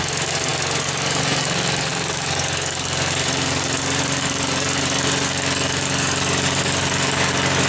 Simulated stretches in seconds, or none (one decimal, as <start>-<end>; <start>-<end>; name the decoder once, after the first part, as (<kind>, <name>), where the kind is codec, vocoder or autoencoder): 0.0-7.7 (codec, DAC)